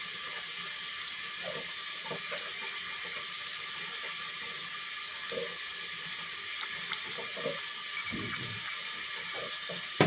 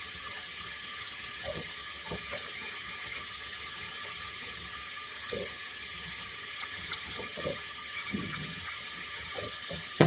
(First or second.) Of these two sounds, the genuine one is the first